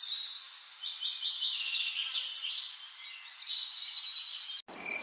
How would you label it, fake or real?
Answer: real